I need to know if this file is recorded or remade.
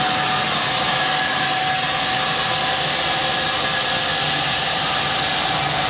recorded